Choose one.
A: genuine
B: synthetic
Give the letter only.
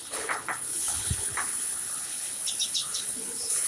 B